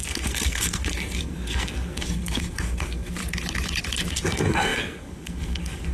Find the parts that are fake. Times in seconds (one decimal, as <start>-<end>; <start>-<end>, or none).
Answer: 0.0-3.2; 4.1-5.9